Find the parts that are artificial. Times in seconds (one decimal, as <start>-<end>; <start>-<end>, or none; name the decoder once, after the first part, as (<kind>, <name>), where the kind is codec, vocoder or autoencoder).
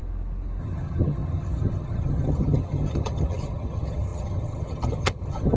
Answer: 0.6-5.6 (vocoder, HiFi-GAN)